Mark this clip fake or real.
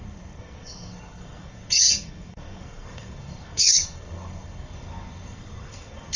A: fake